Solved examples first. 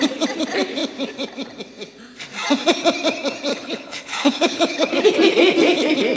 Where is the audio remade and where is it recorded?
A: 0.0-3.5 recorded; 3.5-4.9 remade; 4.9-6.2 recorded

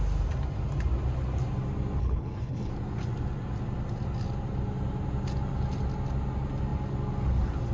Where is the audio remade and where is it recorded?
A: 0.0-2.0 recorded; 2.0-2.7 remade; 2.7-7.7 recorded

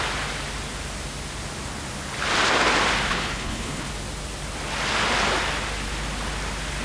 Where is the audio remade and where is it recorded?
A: 0.0-3.1 recorded; 3.1-3.9 remade; 3.9-6.8 recorded

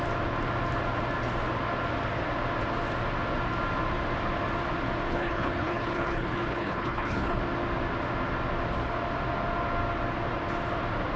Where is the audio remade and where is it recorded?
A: 0.0-5.1 recorded; 5.1-7.4 remade; 7.4-11.2 recorded

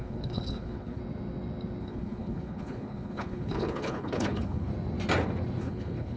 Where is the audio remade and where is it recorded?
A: 0.0-1.0 remade; 1.0-1.8 recorded; 1.8-4.7 remade; 4.7-5.6 recorded; 5.6-6.2 remade

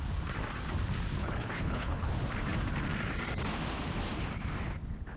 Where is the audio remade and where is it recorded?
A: 0.0-1.2 recorded; 1.2-2.1 remade; 2.1-5.2 recorded

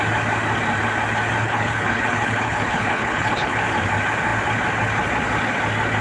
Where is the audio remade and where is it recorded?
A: 0.0-1.4 recorded; 1.4-3.6 remade; 3.6-6.0 recorded

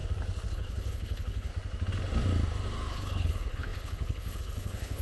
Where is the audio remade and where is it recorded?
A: 0.0-0.5 recorded; 0.5-1.5 remade; 1.5-2.9 recorded; 2.9-5.0 remade